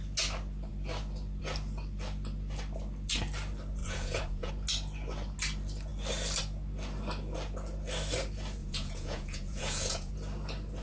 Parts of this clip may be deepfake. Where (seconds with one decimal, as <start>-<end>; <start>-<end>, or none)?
3.8-4.5; 8.6-10.1